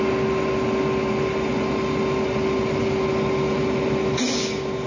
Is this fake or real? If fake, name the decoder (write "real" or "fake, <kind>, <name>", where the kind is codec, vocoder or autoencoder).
real